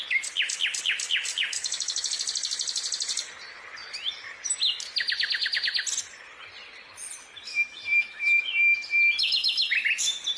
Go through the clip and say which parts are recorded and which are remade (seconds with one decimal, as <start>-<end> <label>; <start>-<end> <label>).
0.0-1.3 recorded; 1.3-2.1 remade; 2.1-7.5 recorded; 7.5-8.5 remade; 8.5-10.4 recorded